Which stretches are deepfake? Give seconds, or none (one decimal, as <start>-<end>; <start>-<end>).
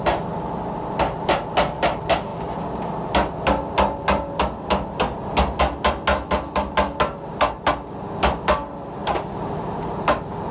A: none